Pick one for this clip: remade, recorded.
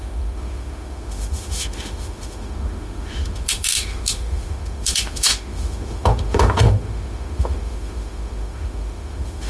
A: remade